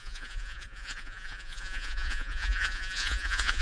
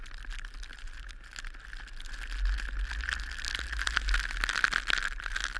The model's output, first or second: first